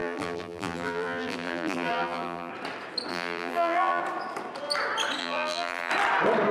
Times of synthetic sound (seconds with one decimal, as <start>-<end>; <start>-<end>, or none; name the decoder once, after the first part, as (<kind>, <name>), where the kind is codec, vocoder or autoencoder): 0.0-2.5 (vocoder, BigVGAN v2); 3.1-4.0; 5.2-5.9